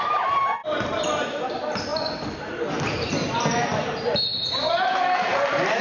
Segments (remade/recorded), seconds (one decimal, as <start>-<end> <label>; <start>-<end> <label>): 0.0-0.6 remade; 0.6-1.2 recorded; 1.2-1.9 remade; 1.9-3.8 recorded; 3.8-5.8 remade